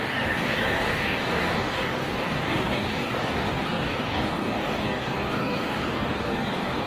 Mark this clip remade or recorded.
remade